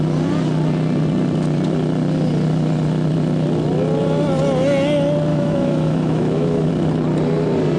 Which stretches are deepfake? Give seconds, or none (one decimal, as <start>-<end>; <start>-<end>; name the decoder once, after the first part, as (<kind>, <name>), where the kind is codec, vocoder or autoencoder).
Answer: 5.3-6.7 (autoencoder, DAC-VAE)